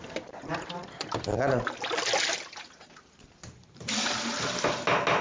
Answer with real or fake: real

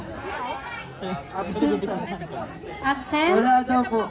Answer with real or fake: real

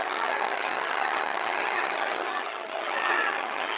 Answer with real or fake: fake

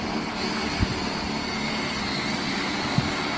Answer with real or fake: real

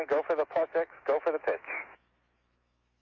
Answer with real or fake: fake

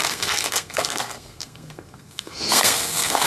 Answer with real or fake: fake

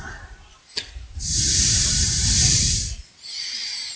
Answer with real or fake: fake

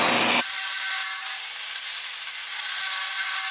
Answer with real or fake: real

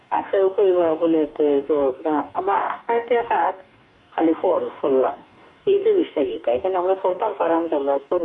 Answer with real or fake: fake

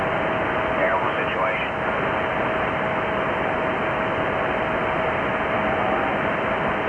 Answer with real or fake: real